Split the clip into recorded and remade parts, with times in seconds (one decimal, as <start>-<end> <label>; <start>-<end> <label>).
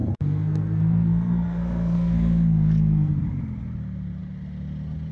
0.0-3.1 remade; 3.1-5.1 recorded